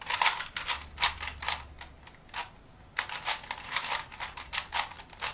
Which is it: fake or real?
real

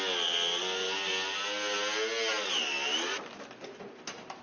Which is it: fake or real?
real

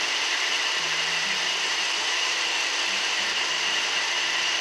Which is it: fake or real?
fake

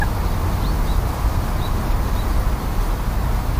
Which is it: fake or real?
real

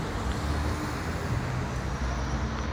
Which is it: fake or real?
real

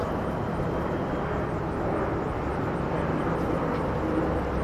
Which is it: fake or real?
real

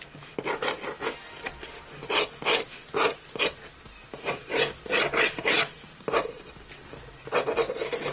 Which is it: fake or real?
real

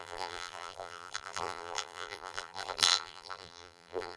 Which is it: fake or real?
fake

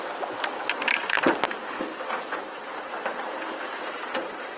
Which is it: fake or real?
real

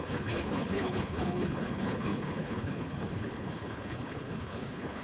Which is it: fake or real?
fake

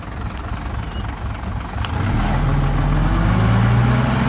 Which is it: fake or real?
real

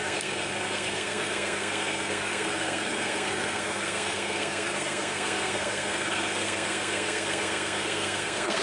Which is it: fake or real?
fake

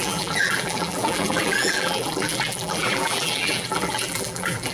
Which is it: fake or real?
fake